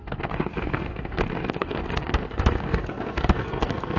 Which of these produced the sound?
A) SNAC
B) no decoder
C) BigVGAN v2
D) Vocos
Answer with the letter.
A